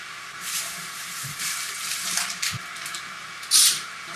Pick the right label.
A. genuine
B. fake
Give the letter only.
B